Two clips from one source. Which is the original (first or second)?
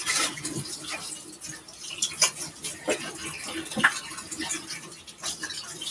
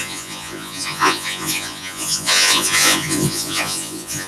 first